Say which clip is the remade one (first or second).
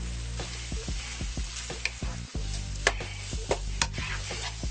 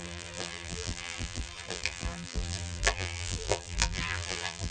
second